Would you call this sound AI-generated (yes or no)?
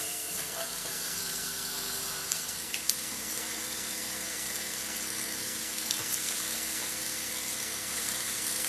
yes